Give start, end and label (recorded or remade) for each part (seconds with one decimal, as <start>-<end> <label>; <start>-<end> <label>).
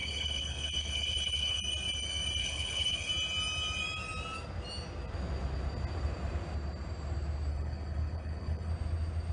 0.0-1.6 remade; 1.6-2.4 recorded; 2.4-3.1 remade; 3.1-7.5 recorded; 7.5-8.7 remade; 8.7-9.3 recorded